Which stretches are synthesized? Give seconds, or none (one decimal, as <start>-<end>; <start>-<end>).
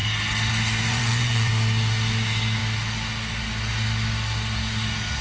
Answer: 0.9-1.5